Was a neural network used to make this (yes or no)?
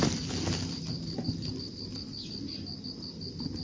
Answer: no